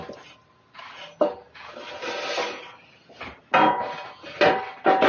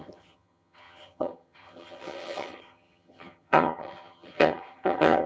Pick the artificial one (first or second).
second